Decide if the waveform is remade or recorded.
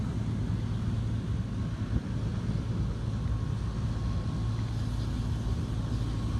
recorded